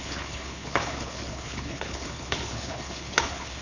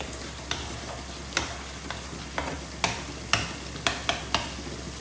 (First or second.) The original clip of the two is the second